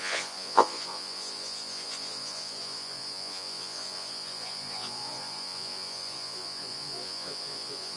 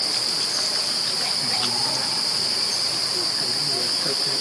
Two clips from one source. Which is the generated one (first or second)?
first